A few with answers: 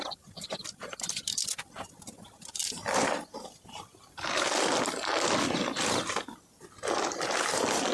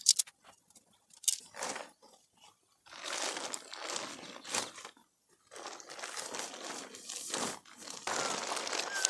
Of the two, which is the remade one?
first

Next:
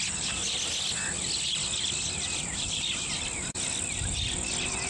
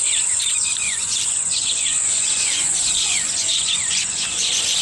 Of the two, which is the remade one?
second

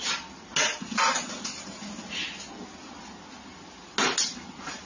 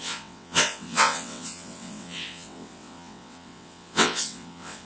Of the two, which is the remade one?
second